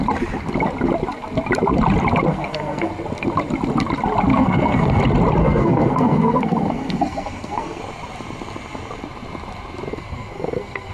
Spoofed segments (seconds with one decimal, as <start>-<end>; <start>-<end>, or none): 2.3-2.9; 4.3-5.0; 5.4-7.8; 9.9-10.9